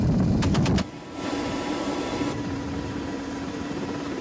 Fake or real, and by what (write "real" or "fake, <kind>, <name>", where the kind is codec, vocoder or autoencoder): fake, vocoder, BigVGAN v2